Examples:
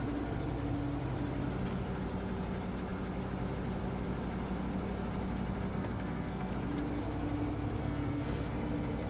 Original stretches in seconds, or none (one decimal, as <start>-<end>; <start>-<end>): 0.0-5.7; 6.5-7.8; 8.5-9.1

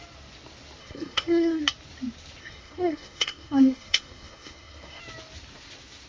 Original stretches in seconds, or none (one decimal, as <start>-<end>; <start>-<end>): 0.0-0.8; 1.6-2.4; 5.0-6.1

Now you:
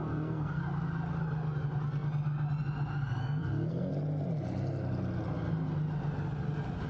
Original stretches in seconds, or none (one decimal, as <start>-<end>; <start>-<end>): 0.6-3.2; 3.9-6.9

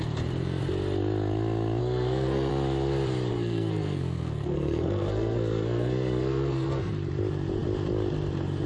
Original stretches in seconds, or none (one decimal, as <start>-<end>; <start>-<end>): 0.0-1.8; 2.5-3.3; 6.9-8.7

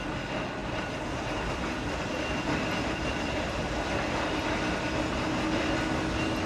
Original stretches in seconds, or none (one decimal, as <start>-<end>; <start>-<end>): 0.0-6.5

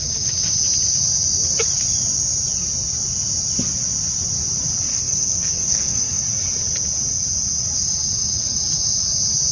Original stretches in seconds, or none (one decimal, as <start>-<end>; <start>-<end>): 0.0-4.9; 6.2-9.5

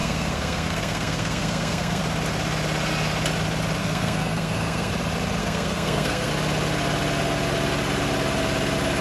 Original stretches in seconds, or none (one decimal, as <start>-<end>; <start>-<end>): 2.0-3.8; 4.9-5.4; 6.3-9.0